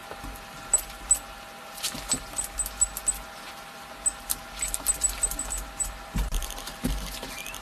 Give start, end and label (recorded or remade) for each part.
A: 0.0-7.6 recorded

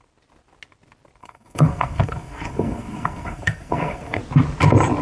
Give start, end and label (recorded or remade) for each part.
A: 0.0-1.2 recorded; 1.2-4.2 remade; 4.2-5.0 recorded

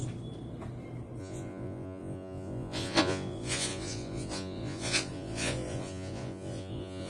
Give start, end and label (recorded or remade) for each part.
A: 0.0-1.2 recorded; 1.2-7.1 remade

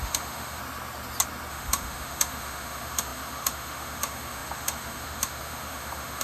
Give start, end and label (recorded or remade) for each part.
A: 0.0-0.6 remade; 0.6-1.5 recorded; 1.5-6.2 remade

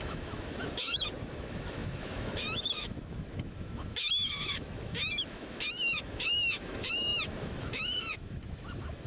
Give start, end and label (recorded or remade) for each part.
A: 0.0-9.1 remade